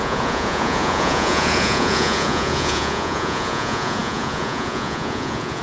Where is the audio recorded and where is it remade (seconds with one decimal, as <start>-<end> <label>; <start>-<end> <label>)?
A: 0.0-5.6 remade